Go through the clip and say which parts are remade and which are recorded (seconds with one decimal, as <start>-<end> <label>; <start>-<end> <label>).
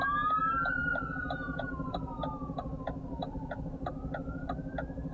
0.0-0.8 recorded; 0.8-3.9 remade; 3.9-5.1 recorded